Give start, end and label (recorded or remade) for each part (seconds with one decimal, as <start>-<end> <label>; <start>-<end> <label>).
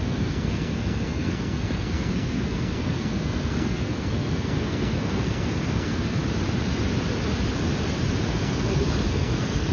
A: 0.0-6.2 remade; 6.2-8.2 recorded; 8.2-9.7 remade